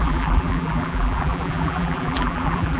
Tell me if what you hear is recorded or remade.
remade